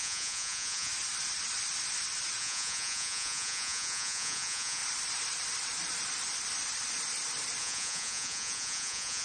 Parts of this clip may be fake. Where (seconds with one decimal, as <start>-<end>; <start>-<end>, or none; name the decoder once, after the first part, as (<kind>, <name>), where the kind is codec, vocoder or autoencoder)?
0.0-0.9 (vocoder, Vocos); 2.4-4.8; 7.6-9.2